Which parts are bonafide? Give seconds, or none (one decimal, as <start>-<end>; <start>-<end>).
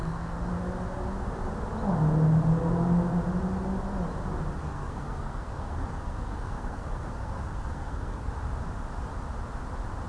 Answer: 0.5-4.6; 8.3-10.1